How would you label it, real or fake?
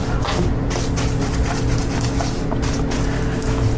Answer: real